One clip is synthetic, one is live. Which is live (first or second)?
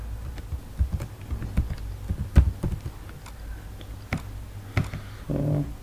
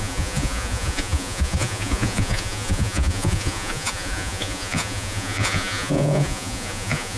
first